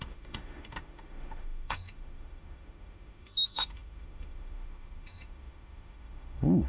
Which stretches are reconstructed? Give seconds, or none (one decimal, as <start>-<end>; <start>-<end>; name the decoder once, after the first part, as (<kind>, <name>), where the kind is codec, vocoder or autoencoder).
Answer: 0.0-6.7 (autoencoder, DAC-VAE)

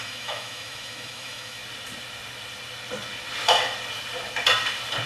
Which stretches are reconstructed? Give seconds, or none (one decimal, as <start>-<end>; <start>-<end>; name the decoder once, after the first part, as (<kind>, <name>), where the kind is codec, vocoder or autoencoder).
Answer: 0.0-1.6 (autoencoder, DAC-VAE)

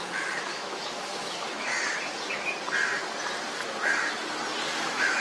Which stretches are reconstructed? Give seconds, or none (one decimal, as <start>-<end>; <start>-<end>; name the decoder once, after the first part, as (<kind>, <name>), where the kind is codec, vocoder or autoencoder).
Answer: 0.0-1.7 (autoencoder, DAC-VAE); 4.8-5.2

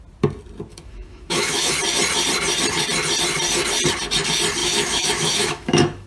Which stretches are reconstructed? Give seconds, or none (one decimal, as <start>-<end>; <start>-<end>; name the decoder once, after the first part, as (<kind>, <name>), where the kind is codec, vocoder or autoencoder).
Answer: 0.7-1.7 (autoencoder, DAC-VAE); 4.6-6.1

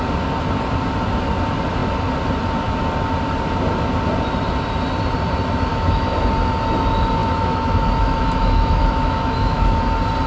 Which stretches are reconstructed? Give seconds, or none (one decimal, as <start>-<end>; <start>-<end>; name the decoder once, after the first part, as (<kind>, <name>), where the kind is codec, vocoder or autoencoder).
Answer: 5.7-6.2 (autoencoder, DAC-VAE); 7.2-9.8

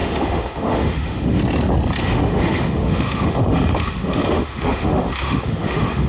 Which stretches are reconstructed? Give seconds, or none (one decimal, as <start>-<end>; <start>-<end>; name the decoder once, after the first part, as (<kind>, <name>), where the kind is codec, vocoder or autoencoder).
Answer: 0.0-1.4 (autoencoder, DAC-VAE); 2.0-6.1

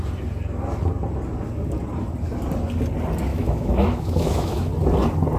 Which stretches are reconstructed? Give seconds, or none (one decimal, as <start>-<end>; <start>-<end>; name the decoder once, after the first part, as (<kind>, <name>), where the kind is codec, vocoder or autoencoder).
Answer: 3.3-4.7 (autoencoder, DAC-VAE)